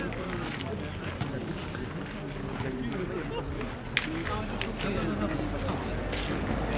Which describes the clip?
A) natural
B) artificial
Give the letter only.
A